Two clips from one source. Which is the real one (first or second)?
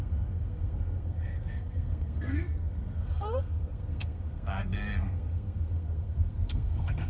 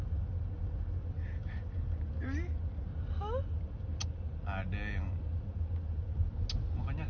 second